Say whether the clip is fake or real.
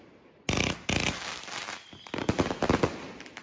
real